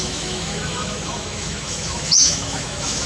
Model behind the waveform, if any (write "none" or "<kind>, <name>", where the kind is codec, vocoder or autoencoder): autoencoder, DAC-VAE